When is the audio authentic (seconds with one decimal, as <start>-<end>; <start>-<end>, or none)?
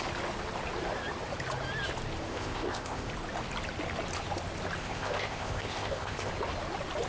0.0-2.3; 3.1-4.8; 6.3-7.1